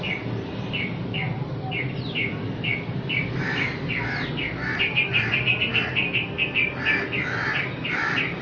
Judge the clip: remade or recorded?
recorded